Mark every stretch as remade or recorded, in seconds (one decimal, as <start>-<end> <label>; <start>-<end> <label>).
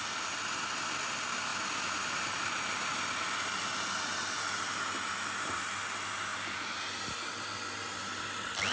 0.0-8.7 recorded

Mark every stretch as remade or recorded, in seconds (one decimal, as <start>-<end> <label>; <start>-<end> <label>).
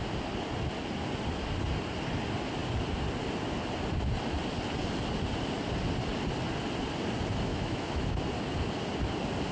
0.0-7.5 recorded; 7.5-8.2 remade; 8.2-9.5 recorded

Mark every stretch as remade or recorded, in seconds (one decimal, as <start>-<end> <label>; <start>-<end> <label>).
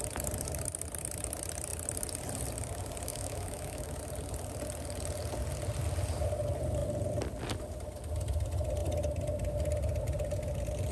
0.0-3.1 recorded; 3.1-4.0 remade; 4.0-10.9 recorded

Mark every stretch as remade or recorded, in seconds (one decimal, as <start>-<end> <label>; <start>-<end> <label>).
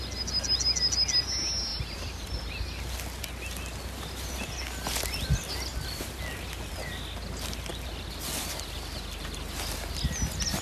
0.0-10.6 recorded